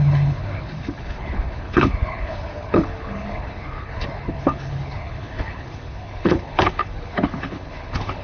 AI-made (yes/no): yes